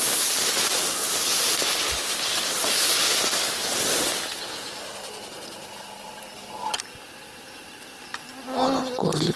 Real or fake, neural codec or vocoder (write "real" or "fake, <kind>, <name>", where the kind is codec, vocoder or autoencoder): real